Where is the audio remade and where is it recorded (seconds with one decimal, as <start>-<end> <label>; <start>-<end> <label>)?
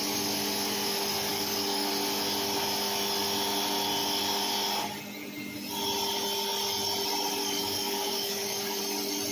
0.0-1.3 recorded; 1.3-1.9 remade; 1.9-7.4 recorded; 7.4-8.8 remade; 8.8-9.3 recorded